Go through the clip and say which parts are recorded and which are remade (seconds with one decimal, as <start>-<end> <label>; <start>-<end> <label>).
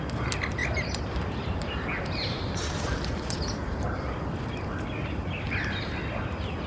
0.0-0.6 recorded; 0.6-4.6 remade; 4.6-6.7 recorded